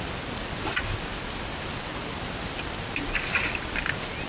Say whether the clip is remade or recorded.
recorded